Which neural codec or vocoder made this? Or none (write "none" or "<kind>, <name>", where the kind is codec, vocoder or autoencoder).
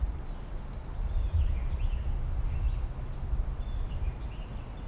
none